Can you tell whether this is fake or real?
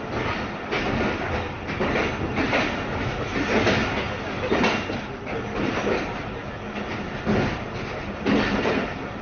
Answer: real